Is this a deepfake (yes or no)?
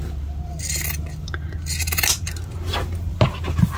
no